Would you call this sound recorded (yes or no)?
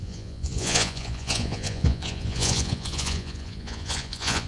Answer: no